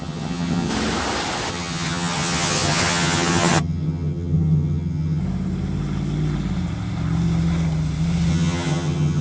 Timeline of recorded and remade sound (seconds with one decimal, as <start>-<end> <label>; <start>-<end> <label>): 0.0-0.7 remade; 0.7-1.5 recorded; 1.5-5.2 remade; 5.2-8.3 recorded; 8.3-9.2 remade